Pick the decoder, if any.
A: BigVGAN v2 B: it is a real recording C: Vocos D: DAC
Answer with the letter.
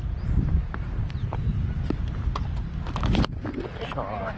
B